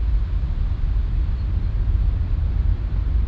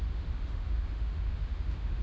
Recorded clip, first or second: first